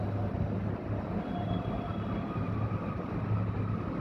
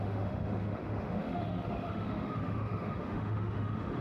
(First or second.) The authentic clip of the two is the first